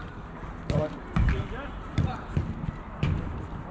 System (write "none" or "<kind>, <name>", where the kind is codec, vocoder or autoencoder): none